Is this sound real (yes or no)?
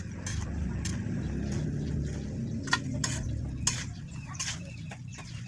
yes